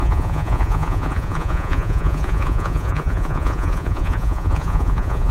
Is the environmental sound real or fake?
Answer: fake